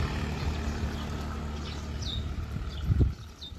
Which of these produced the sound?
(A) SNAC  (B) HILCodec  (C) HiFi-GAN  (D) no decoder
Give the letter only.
D